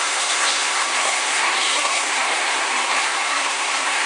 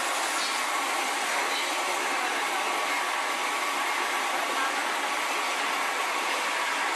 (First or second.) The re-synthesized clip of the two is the first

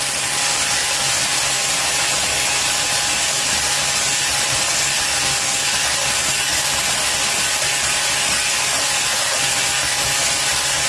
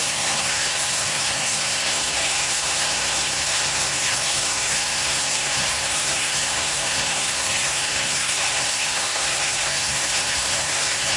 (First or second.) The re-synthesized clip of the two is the second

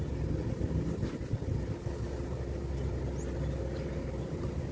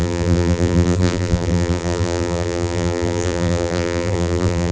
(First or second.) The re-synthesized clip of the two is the second